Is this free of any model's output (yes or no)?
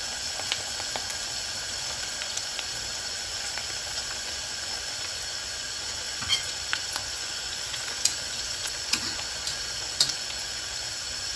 no